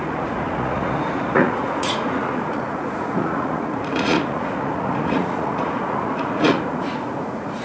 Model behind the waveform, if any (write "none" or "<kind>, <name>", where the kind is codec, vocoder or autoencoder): vocoder, Vocos